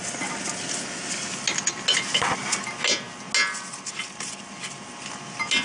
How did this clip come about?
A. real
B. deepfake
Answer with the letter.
A